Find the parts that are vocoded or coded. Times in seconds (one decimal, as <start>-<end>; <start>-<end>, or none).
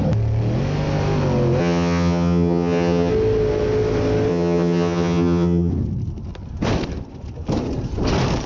1.6-3.1; 4.3-5.7